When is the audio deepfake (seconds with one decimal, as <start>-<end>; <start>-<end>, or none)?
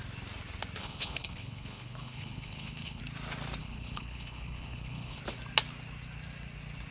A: 0.8-3.0; 3.6-5.2